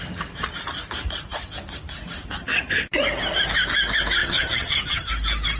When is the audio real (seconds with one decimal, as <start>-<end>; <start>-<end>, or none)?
0.0-4.2; 5.1-5.6